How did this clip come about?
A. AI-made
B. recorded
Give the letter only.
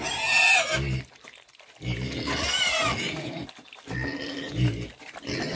B